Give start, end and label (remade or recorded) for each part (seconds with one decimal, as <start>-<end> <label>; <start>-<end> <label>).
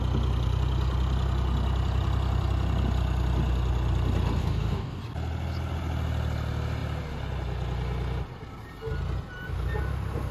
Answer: 0.0-4.4 recorded; 4.4-5.0 remade; 5.0-10.3 recorded